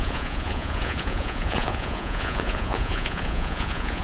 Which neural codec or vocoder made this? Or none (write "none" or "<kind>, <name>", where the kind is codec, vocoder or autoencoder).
vocoder, Vocos